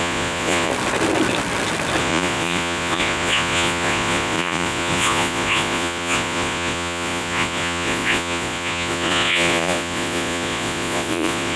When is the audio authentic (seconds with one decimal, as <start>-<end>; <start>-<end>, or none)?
0.7-2.0